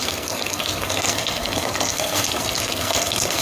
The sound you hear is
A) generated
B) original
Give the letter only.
A